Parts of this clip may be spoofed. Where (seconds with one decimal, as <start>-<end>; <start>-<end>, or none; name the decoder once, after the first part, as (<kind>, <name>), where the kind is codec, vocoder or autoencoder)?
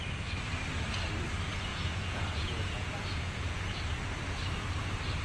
1.7-3.8 (vocoder, Vocos)